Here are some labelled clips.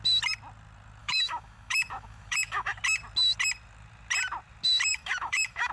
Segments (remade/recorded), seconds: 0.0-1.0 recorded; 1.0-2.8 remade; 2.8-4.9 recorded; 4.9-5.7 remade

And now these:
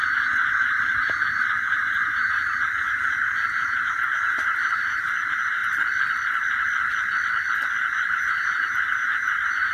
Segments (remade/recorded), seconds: 0.0-5.6 remade; 5.6-7.9 recorded; 7.9-9.7 remade

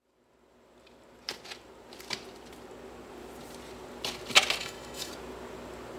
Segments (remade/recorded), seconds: 0.0-4.6 recorded; 4.6-5.1 remade; 5.1-6.0 recorded

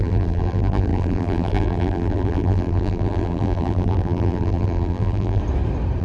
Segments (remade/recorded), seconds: 0.0-5.4 remade; 5.4-6.0 recorded

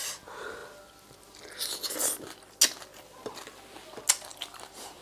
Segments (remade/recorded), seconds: 0.0-4.3 recorded; 4.3-5.0 remade

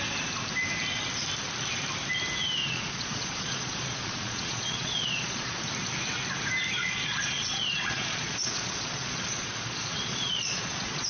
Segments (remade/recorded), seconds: 0.0-2.6 recorded; 2.6-5.6 remade; 5.6-6.8 recorded; 6.8-11.1 remade

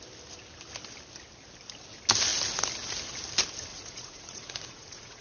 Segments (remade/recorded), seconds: 0.0-3.7 recorded; 3.7-5.2 remade

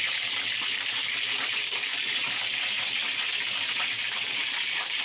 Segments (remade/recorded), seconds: 0.0-5.0 remade